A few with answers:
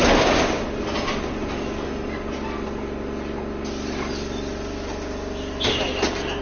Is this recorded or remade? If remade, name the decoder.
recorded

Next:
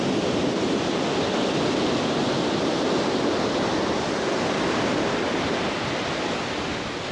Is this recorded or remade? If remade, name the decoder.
recorded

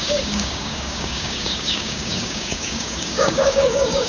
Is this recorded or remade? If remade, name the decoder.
remade, codec, DAC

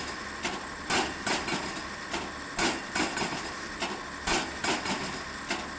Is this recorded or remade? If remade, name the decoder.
recorded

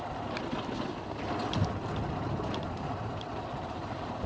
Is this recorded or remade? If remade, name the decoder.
recorded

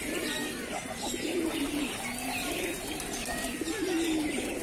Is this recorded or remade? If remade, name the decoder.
recorded